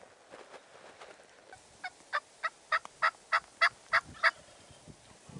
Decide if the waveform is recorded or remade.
recorded